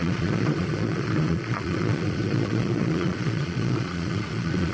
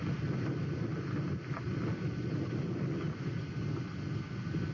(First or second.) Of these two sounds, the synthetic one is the first